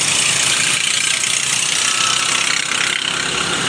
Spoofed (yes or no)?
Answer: no